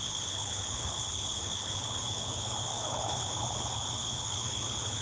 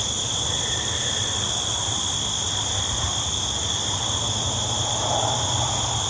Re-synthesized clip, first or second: first